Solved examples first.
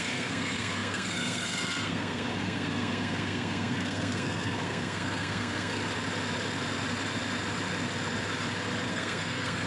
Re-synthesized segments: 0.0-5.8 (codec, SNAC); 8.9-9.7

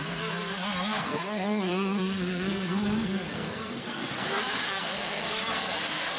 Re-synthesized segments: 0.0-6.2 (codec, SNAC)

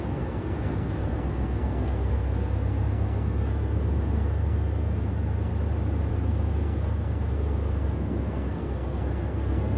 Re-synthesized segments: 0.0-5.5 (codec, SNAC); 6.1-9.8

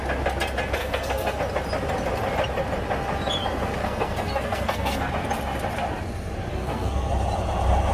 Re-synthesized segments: 0.8-1.4 (codec, SNAC); 3.8-5.1; 6.5-7.1